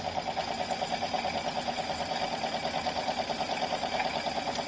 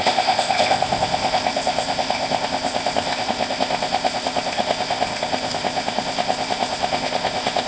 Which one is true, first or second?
first